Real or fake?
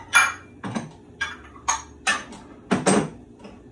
real